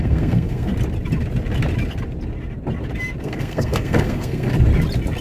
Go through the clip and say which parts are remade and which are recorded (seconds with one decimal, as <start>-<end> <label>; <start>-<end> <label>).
0.0-0.7 remade; 0.7-3.2 recorded; 3.2-4.5 remade; 4.5-5.2 recorded

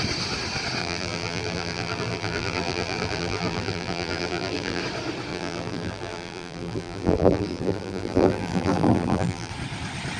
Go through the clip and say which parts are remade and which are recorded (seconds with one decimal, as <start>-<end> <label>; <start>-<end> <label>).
0.0-0.8 recorded; 0.8-4.8 remade; 4.8-5.3 recorded; 5.3-9.5 remade; 9.5-10.2 recorded

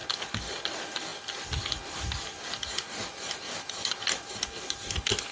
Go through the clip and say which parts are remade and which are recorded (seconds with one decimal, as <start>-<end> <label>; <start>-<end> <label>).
0.0-5.3 recorded

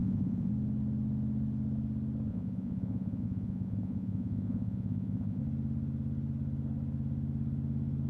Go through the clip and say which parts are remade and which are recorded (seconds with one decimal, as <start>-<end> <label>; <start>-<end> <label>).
0.0-0.5 remade; 0.5-2.3 recorded; 2.3-5.4 remade; 5.4-8.1 recorded

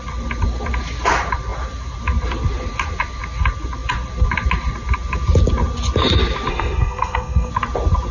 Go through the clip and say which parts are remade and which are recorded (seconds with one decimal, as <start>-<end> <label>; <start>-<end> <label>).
0.0-6.5 recorded; 6.5-7.5 remade; 7.5-8.1 recorded

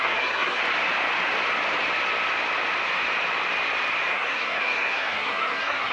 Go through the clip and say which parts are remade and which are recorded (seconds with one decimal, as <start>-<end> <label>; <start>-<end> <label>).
0.0-0.6 remade; 0.6-4.1 recorded; 4.1-5.9 remade